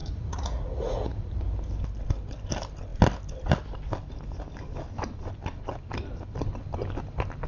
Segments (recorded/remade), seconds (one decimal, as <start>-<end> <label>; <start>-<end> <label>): 0.0-1.4 remade; 1.4-7.5 recorded